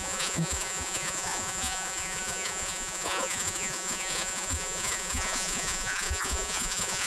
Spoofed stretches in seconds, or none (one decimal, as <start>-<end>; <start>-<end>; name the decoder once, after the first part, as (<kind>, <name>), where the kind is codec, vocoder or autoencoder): 0.0-7.1 (vocoder, Vocos)